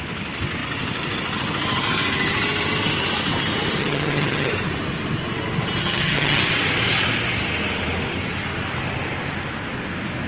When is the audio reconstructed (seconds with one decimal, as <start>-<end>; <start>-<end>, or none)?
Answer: 3.8-4.5; 5.8-6.4